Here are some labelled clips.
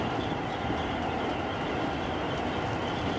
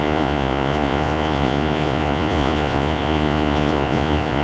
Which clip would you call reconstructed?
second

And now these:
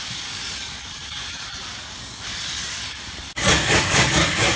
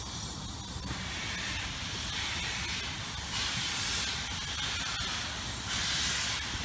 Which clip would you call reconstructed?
first